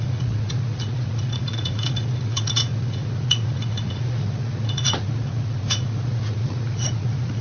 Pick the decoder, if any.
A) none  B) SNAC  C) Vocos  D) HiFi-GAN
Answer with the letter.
C